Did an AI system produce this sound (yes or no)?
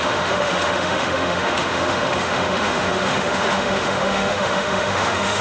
yes